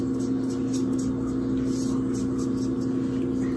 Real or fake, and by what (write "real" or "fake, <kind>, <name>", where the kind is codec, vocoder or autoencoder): real